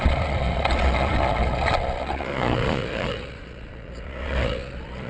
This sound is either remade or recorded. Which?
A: remade